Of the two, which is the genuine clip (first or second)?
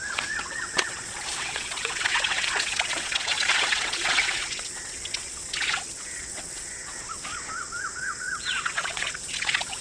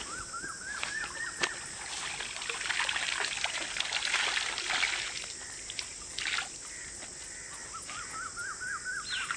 second